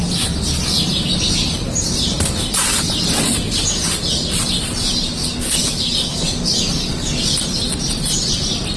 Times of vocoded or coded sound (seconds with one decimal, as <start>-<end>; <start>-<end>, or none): 5.2-7.2